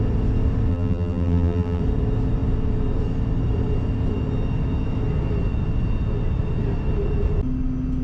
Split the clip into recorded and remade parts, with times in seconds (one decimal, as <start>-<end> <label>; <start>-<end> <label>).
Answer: 0.0-0.7 recorded; 0.7-1.8 remade; 1.8-8.0 recorded